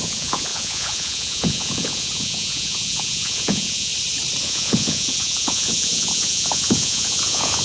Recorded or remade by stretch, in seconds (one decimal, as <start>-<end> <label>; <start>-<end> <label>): 0.0-3.9 remade; 3.9-4.4 recorded; 4.4-7.6 remade